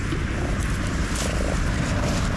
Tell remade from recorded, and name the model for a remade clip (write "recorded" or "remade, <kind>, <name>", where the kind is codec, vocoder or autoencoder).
recorded